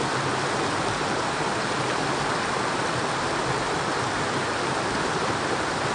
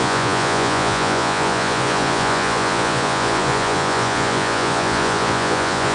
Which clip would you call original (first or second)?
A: first